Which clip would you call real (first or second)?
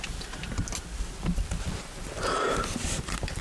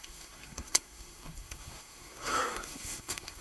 first